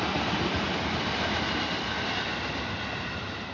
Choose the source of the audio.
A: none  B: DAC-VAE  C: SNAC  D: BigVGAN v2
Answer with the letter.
A